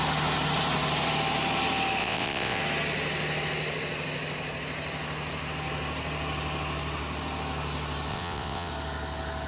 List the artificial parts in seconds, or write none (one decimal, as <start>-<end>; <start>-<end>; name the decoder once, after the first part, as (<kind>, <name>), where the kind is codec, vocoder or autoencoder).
2.0-2.6 (vocoder, WaveNeXt); 8.1-8.7